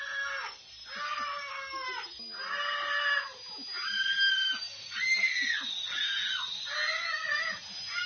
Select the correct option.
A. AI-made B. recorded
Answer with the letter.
B